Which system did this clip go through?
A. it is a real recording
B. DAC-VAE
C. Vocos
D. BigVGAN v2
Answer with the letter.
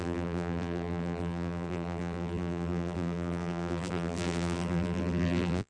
D